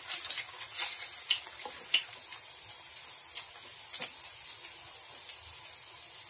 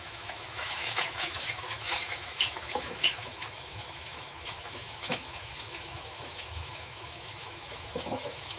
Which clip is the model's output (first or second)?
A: second